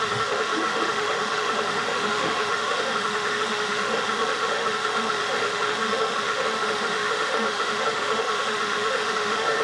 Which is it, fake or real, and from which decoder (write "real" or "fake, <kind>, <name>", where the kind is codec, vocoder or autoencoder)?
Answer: fake, autoencoder, DAC-VAE